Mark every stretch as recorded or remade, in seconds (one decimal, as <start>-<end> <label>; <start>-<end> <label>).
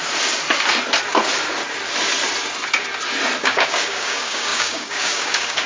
0.0-3.4 recorded; 3.4-5.7 remade